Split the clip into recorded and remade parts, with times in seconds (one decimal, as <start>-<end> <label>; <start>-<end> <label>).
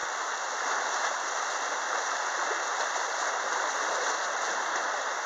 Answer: 0.0-5.3 recorded